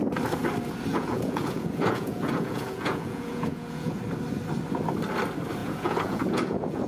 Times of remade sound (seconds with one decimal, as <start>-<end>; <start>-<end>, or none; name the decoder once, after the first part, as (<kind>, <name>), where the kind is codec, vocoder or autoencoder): 0.9-4.0 (vocoder, Vocos); 5.6-6.9